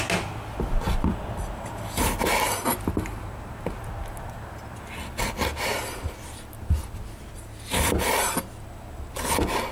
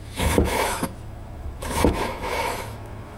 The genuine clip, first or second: first